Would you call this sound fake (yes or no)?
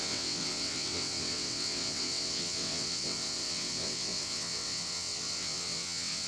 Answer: yes